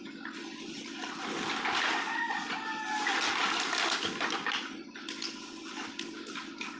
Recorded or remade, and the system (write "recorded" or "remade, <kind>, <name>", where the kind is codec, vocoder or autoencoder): recorded